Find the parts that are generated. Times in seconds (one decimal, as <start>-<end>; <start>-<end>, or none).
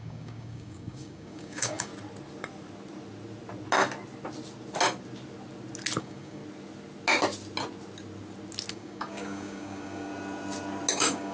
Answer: 0.0-1.9; 6.0-6.4; 8.7-10.1; 10.9-11.3